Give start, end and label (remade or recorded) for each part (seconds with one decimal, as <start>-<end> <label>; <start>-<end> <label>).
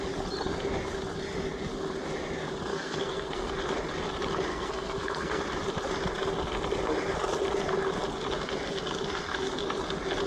0.0-2.7 recorded; 2.7-3.5 remade; 3.5-4.5 recorded; 4.5-5.4 remade; 5.4-10.3 recorded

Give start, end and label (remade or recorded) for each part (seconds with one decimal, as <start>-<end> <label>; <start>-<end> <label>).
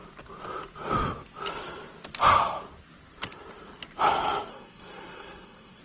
0.0-4.5 recorded; 4.5-5.8 remade